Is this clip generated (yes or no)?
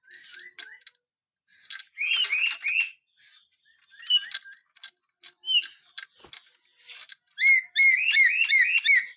no